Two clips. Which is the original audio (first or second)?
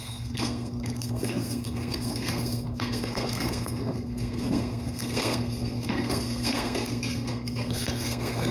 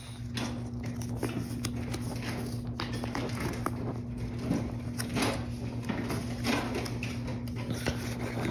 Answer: second